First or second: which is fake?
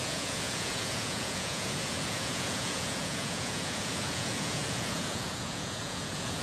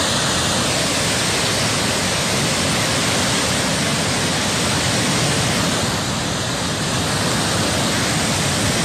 first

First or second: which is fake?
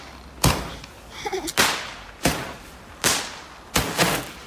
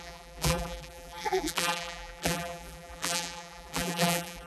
second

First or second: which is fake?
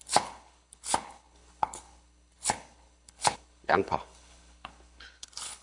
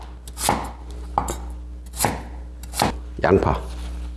first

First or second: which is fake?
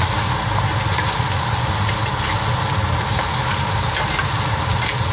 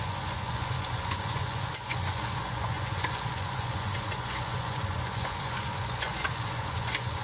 second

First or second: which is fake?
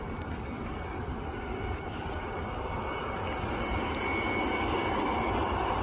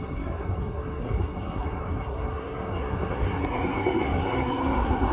second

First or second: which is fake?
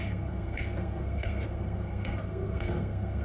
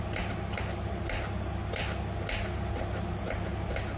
first